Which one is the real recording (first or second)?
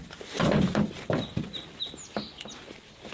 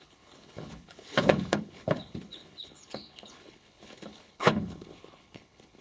first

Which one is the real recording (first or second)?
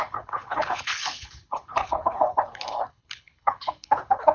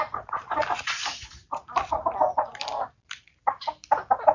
second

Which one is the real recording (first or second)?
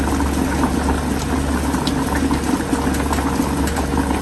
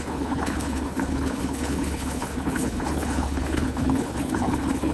first